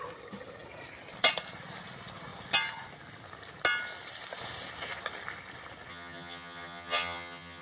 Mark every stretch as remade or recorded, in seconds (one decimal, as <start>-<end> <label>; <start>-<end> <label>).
0.0-5.9 recorded; 5.9-7.6 remade